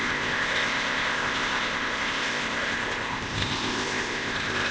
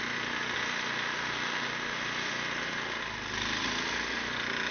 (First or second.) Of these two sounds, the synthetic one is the first